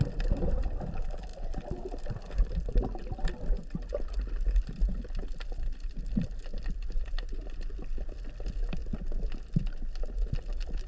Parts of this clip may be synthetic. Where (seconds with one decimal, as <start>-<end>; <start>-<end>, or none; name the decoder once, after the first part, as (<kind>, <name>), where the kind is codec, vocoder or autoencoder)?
none